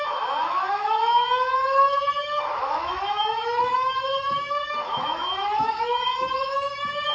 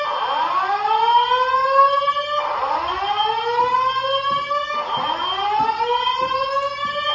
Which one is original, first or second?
second